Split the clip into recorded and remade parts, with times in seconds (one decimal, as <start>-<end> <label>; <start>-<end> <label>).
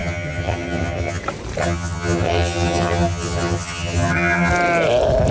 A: 0.0-1.2 remade; 1.2-1.6 recorded; 1.6-4.5 remade; 4.5-5.3 recorded